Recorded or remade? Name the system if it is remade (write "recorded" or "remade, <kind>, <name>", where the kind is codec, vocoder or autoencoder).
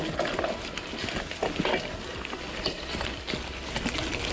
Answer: recorded